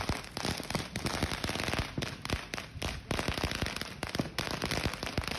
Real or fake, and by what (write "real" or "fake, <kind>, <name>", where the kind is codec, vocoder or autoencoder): real